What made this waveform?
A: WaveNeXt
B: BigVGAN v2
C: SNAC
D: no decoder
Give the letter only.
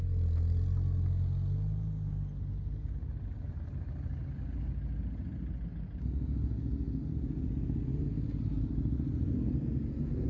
D